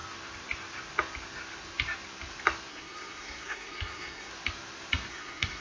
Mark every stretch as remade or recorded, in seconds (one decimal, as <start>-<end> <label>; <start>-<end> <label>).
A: 0.0-2.7 recorded; 2.7-4.3 remade; 4.3-5.1 recorded; 5.1-5.6 remade